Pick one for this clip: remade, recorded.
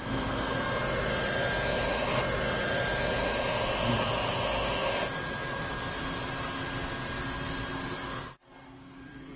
recorded